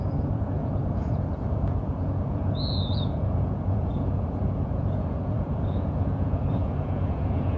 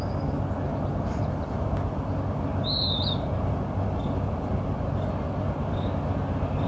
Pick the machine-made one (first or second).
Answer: first